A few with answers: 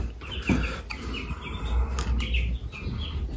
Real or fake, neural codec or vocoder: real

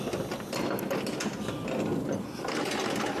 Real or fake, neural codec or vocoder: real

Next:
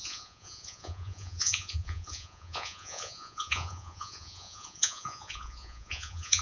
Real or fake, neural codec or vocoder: fake, vocoder, Vocos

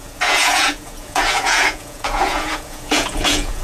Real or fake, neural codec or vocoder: fake, vocoder, Vocos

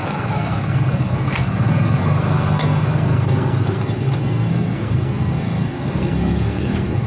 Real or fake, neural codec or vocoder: fake, codec, SNAC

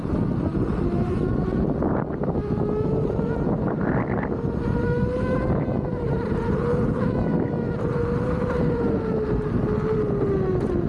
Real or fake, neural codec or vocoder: real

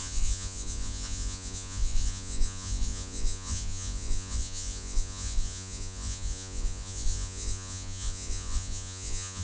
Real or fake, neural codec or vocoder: fake, vocoder, Vocos